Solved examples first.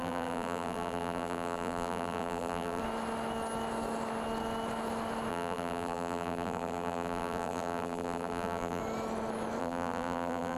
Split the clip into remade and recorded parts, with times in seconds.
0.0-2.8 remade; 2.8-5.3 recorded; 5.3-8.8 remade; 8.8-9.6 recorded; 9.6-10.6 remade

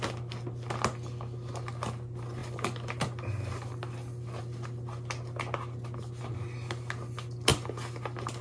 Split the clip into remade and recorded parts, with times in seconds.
0.0-8.4 recorded

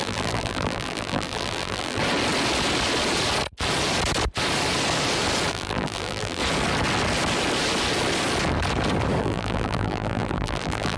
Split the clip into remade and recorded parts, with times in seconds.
0.0-2.0 remade; 2.0-5.5 recorded; 5.5-6.4 remade; 6.4-9.2 recorded; 9.2-11.0 remade

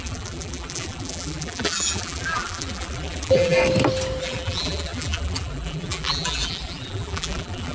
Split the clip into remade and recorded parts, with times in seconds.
0.0-3.6 remade; 3.6-4.2 recorded; 4.2-7.7 remade

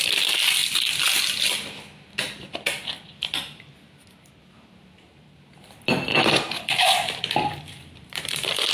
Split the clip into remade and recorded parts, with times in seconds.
0.0-6.1 recorded; 6.1-8.7 remade

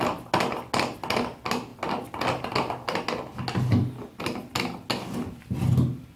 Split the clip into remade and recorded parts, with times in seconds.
0.0-6.2 recorded